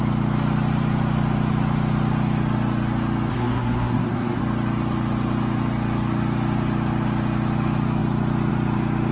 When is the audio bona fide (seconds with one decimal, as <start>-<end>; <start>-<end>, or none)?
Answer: 0.0-3.3; 4.4-9.1